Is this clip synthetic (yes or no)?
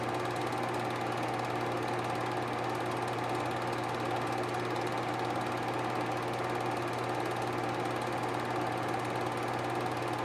no